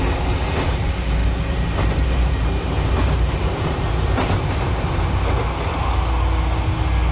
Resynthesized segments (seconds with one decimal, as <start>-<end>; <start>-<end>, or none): 1.2-5.3